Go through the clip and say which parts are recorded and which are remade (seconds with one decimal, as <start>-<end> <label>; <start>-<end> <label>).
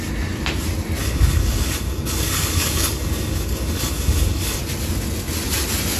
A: 0.0-1.0 recorded; 1.0-4.6 remade; 4.6-6.0 recorded